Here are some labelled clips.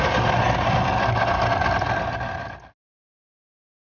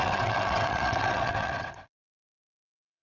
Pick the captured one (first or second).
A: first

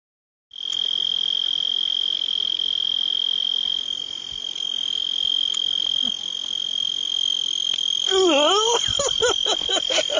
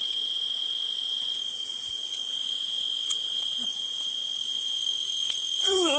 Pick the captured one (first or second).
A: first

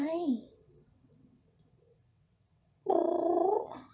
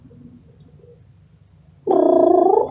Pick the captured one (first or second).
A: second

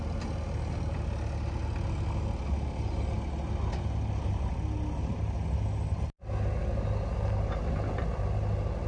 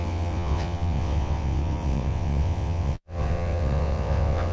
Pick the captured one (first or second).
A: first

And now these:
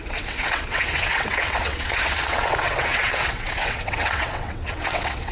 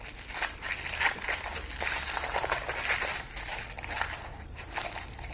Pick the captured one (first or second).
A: second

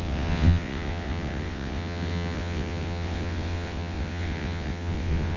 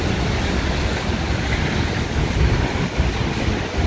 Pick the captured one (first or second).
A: second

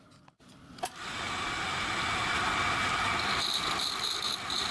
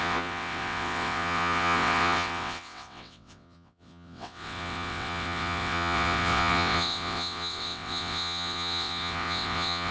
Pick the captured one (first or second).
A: first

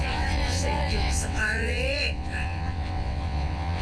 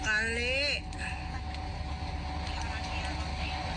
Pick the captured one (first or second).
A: second